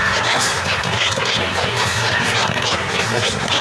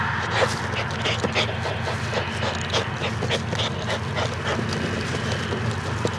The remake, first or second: first